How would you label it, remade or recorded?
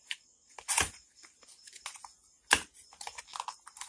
recorded